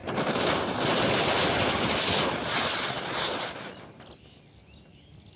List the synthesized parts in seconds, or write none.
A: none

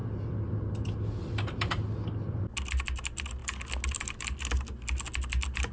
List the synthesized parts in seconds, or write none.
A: none

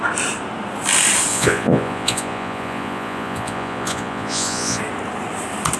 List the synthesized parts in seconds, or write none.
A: 1.3-4.8

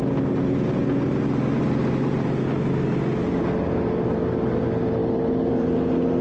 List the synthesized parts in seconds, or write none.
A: none